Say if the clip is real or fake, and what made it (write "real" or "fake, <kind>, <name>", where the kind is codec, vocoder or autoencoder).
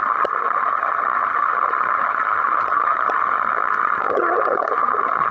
fake, vocoder, HiFi-GAN